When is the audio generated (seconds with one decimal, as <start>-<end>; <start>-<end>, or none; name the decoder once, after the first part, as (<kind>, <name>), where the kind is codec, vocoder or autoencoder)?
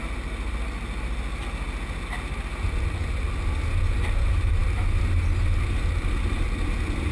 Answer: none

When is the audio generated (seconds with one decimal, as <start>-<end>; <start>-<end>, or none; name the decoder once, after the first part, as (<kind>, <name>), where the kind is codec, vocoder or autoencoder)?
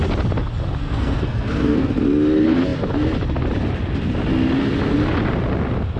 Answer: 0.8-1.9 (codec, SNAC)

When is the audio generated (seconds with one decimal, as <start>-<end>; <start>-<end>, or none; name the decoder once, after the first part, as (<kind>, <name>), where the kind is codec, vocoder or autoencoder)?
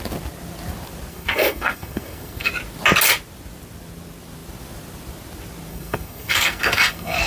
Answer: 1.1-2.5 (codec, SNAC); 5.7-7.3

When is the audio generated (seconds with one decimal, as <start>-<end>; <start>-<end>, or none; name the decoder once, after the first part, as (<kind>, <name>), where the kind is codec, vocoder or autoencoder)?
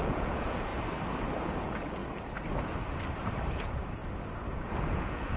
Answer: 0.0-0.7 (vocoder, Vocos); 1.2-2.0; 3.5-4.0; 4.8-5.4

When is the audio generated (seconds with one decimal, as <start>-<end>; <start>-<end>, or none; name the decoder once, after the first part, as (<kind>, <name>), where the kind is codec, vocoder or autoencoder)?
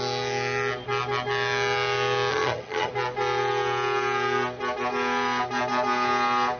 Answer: 2.3-2.9 (vocoder, HiFi-GAN)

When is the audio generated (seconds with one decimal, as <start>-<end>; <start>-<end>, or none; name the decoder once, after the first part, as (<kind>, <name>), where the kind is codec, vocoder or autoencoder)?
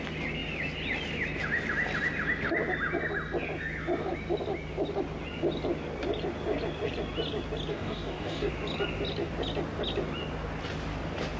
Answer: 7.7-8.5 (codec, DAC)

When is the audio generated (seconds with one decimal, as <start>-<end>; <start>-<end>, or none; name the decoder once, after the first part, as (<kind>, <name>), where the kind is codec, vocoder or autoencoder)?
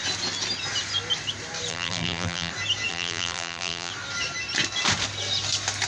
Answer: 1.7-2.5 (vocoder, BigVGAN v2); 2.9-3.9